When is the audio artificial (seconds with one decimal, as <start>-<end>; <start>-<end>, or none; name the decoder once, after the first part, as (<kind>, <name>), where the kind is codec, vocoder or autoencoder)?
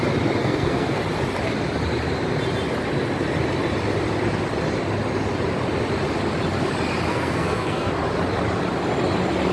0.4-1.0 (codec, SNAC); 7.1-7.9